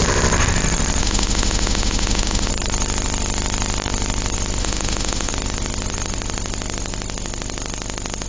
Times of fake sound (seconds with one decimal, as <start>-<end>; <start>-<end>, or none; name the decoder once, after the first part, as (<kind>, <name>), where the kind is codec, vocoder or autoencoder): 1.0-2.5 (autoencoder, DAC-VAE); 4.6-5.3